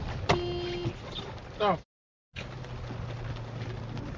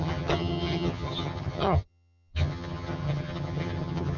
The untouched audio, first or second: first